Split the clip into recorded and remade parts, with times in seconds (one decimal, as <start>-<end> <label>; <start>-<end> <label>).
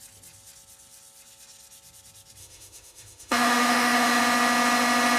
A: 0.0-2.4 recorded; 2.4-4.2 remade; 4.2-5.2 recorded